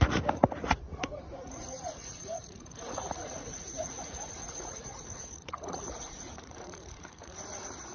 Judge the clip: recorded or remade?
remade